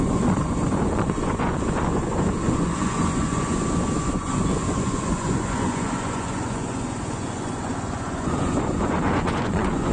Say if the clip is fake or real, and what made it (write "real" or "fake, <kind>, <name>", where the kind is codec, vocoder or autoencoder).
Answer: fake, vocoder, Vocos